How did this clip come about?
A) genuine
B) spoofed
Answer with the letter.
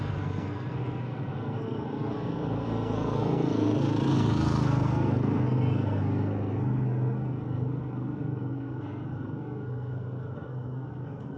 B